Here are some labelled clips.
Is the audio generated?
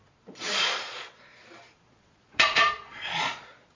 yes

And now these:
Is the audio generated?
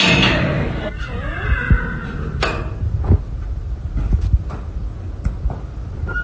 no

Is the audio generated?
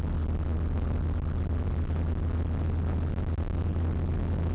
no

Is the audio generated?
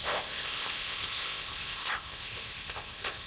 yes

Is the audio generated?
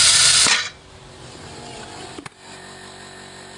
yes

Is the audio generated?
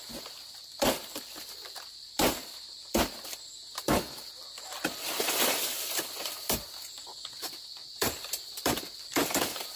yes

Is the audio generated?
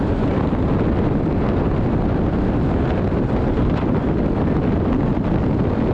no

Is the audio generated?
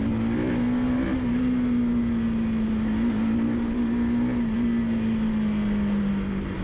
no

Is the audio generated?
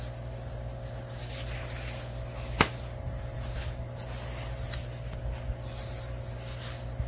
no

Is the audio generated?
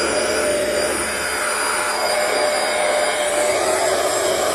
no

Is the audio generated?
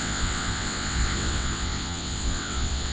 yes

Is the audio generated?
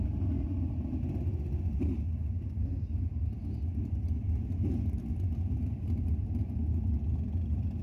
no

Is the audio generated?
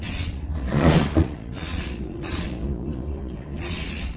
yes